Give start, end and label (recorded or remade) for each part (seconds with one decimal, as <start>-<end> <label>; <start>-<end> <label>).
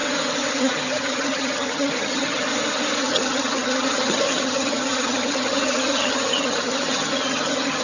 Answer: 0.0-0.5 recorded; 0.5-2.5 remade; 2.5-3.0 recorded; 3.0-7.8 remade